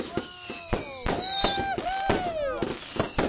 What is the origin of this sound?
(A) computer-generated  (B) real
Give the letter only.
B